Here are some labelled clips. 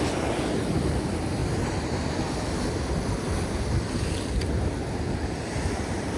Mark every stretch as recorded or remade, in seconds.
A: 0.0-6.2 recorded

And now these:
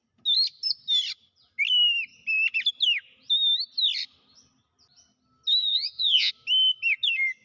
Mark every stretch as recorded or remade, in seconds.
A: 0.0-5.6 recorded; 5.6-6.3 remade; 6.3-7.4 recorded

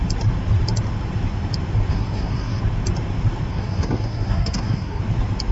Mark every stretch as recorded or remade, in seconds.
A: 0.0-1.9 recorded; 1.9-2.6 remade; 2.6-3.5 recorded; 3.5-5.0 remade; 5.0-5.5 recorded

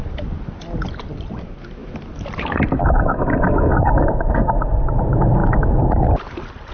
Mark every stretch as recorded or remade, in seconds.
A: 0.0-6.7 recorded

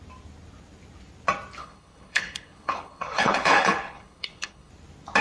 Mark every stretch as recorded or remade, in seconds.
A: 0.0-1.6 recorded; 1.6-4.7 remade; 4.7-5.2 recorded

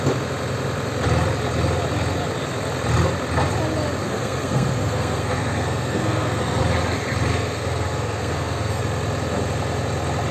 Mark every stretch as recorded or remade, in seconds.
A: 0.0-4.0 recorded; 4.0-6.6 remade; 6.6-7.3 recorded; 7.3-8.8 remade; 8.8-10.3 recorded